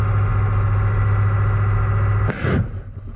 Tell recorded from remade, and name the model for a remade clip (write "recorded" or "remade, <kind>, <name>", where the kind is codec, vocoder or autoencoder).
recorded